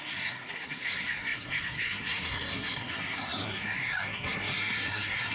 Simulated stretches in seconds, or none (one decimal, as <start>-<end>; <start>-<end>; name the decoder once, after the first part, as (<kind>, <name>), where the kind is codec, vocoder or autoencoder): 0.0-5.3 (codec, SNAC)